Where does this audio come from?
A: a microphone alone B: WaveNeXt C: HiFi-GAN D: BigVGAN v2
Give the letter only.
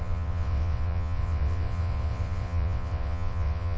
B